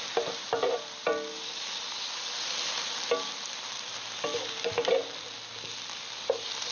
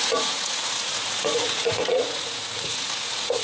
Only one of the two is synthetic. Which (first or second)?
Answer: second